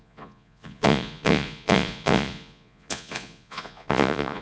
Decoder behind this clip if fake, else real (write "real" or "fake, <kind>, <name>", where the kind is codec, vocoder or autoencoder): fake, vocoder, Vocos